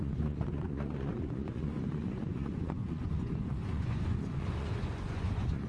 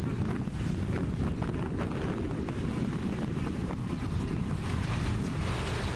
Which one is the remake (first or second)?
first